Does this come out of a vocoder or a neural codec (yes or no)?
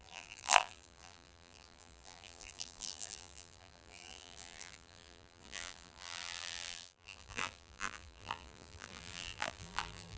yes